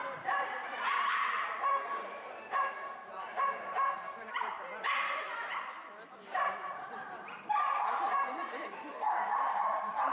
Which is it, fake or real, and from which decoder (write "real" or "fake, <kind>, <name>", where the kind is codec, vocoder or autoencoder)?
fake, vocoder, BigVGAN v2